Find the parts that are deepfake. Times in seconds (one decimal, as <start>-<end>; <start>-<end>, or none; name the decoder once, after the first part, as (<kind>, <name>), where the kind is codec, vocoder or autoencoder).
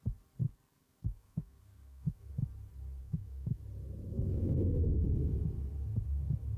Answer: 0.4-2.3 (codec, SNAC); 3.0-3.6; 4.1-4.8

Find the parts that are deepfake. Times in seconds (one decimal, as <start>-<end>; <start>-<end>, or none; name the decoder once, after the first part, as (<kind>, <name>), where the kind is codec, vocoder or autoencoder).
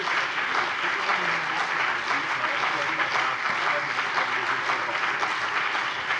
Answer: none